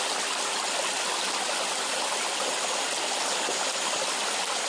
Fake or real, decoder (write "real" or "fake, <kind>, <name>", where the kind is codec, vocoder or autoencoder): real